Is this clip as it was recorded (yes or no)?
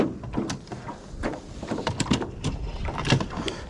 yes